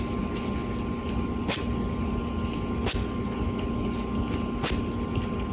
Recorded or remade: recorded